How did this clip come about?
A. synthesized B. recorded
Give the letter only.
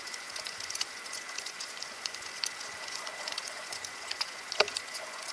A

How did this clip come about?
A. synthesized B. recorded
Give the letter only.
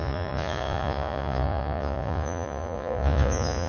A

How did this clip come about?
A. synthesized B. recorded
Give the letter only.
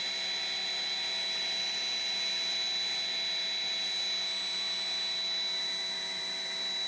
B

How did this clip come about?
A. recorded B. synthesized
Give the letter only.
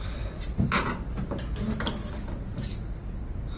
A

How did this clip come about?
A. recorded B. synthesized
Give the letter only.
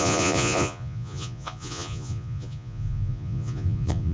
B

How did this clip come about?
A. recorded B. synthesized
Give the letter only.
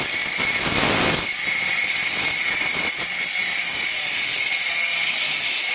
A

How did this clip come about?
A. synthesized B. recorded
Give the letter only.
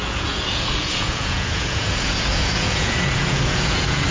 A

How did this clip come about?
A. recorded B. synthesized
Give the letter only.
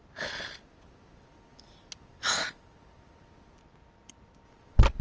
A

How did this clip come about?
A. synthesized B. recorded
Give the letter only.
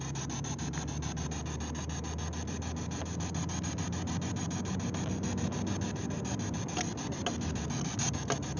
B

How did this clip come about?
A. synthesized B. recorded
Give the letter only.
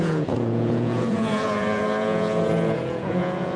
A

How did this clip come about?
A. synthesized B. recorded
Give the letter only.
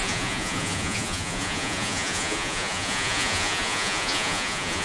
A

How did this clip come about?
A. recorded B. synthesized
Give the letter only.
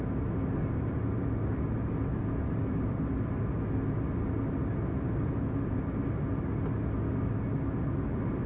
A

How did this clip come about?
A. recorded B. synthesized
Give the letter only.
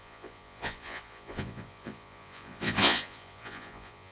B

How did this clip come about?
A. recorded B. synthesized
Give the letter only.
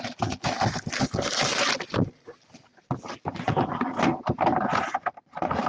A